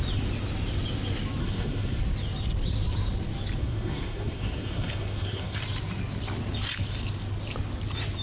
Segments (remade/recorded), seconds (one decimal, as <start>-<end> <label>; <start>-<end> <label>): 0.0-1.4 recorded; 1.4-2.0 remade; 2.0-3.6 recorded; 3.6-5.6 remade; 5.6-8.2 recorded